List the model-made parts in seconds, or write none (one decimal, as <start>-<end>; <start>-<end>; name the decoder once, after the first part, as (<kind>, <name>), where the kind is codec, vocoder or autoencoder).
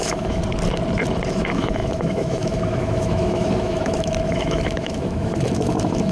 0.0-0.4 (autoencoder, DAC-VAE); 1.3-6.1